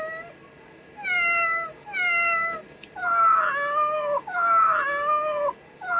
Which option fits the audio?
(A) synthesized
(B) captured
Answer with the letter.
B